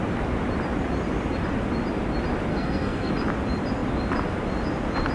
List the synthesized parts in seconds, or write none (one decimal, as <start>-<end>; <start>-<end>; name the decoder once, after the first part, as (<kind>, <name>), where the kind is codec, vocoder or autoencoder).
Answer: 2.5-3.1 (codec, SNAC)